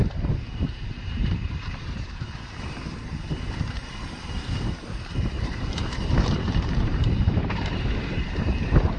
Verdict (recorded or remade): remade